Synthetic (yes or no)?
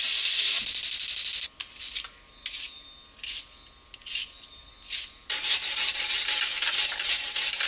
no